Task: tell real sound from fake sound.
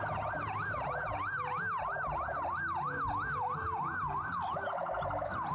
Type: real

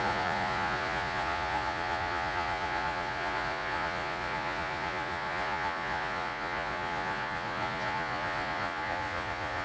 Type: fake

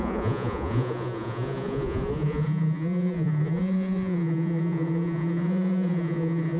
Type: fake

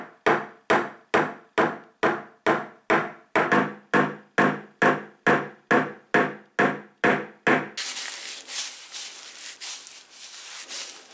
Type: real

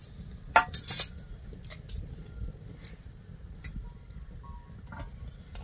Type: real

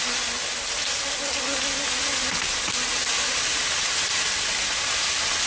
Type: real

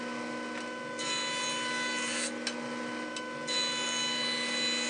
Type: real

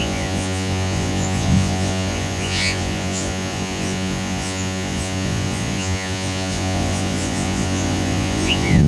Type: fake